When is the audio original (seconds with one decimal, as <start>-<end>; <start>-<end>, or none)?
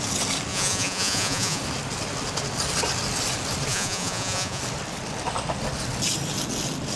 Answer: 0.0-0.5; 1.6-3.7; 4.6-7.0